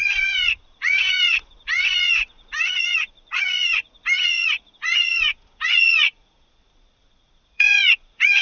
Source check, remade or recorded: remade